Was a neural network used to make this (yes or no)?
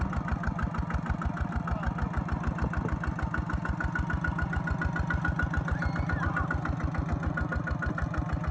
no